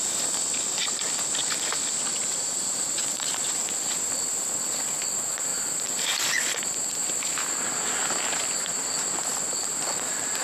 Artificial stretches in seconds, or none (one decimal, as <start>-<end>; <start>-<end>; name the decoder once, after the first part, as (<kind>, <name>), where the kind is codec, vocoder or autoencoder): 2.2-3.6 (vocoder, BigVGAN v2); 5.5-6.1; 9.3-10.4